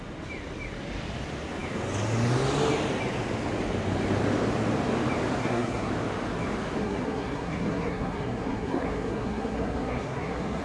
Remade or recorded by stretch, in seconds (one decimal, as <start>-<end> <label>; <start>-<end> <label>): 0.0-5.4 recorded; 5.4-5.9 remade; 5.9-6.8 recorded; 6.8-10.6 remade